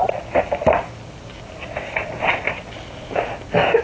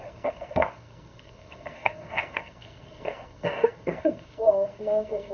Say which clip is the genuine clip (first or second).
first